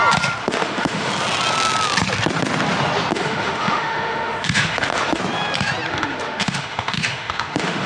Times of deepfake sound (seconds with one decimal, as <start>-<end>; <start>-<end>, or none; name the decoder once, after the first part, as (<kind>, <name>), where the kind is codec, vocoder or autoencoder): 0.4-1.1 (autoencoder, DAC-VAE); 3.1-5.2; 5.9-7.9